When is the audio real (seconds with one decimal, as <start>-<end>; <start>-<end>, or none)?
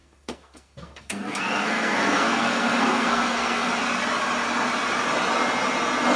3.7-6.2